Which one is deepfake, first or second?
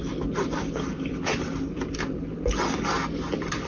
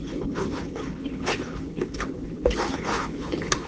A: second